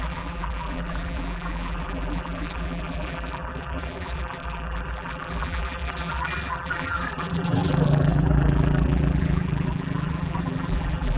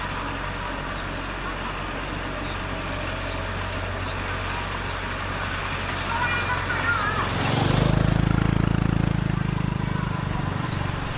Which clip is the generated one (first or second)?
first